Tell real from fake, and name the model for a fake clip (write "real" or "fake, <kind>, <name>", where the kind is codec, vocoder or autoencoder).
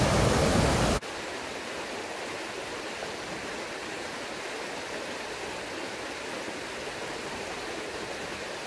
real